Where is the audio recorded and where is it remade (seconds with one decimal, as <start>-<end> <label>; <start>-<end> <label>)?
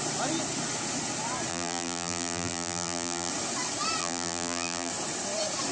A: 0.0-1.5 recorded; 1.5-3.3 remade; 3.3-4.0 recorded; 4.0-4.9 remade; 4.9-5.7 recorded